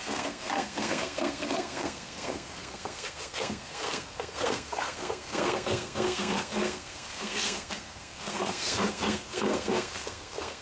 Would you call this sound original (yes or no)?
no